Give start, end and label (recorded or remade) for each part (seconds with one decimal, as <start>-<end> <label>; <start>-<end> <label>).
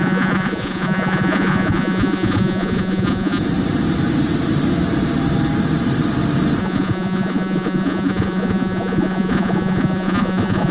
0.0-3.4 remade; 3.4-6.6 recorded; 6.6-10.7 remade